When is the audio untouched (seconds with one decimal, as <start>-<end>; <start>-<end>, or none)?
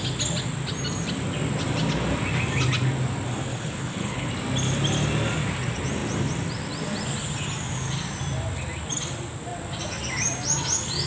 0.0-3.5; 4.3-11.1